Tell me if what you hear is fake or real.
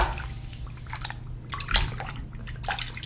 real